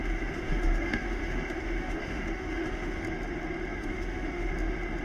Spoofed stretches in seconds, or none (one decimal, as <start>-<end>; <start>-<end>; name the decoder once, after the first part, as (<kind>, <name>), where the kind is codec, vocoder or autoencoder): 0.0-3.0 (autoencoder, DAC-VAE); 3.8-4.5